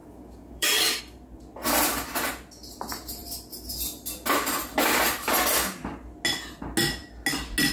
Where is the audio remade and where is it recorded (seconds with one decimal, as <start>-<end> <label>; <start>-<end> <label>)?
0.0-1.0 remade; 1.0-7.7 recorded